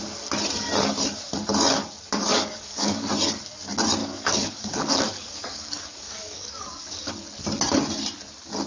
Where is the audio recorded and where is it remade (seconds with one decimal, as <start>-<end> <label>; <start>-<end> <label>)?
0.0-2.3 recorded; 2.3-3.1 remade; 3.1-4.0 recorded; 4.0-7.1 remade; 7.1-8.7 recorded